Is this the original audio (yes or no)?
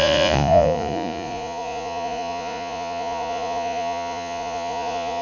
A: no